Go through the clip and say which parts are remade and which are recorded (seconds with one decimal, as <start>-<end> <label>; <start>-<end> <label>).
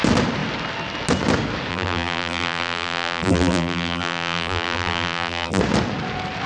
0.0-1.7 recorded; 1.7-5.6 remade; 5.6-6.5 recorded